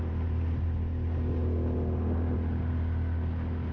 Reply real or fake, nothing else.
real